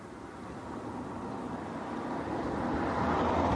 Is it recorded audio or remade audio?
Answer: recorded